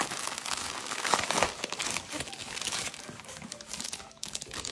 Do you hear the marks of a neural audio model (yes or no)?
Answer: yes